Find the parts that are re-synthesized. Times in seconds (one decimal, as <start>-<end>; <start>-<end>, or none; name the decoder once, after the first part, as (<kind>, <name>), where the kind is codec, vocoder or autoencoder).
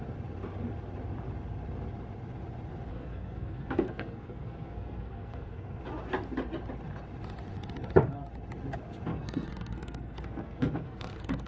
2.9-5.8 (codec, SNAC); 9.1-11.5